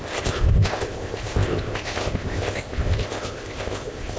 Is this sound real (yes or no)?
no